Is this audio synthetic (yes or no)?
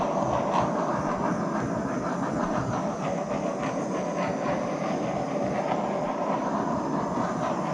no